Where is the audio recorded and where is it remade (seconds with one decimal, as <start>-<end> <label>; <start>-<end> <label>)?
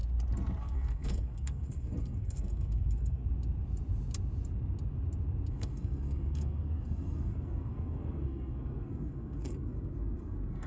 0.0-0.6 recorded; 0.6-3.2 remade; 3.2-5.5 recorded; 5.5-10.7 remade